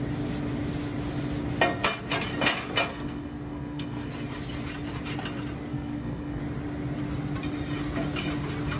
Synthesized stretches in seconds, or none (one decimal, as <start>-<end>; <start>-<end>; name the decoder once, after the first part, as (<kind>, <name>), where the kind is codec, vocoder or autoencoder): 2.9-4.1 (codec, SNAC); 5.7-6.4